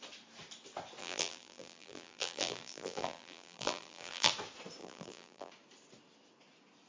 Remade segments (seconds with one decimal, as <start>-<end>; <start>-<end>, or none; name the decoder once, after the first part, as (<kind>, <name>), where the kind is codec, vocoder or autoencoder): 1.0-4.3 (vocoder, BigVGAN v2); 4.8-5.5